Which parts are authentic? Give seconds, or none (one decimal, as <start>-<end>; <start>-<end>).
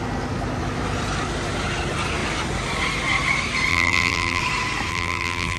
0.0-3.7; 4.4-4.9